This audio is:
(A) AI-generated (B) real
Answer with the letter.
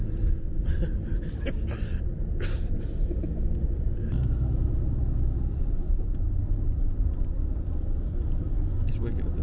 B